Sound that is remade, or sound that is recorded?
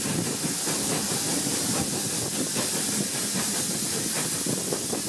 recorded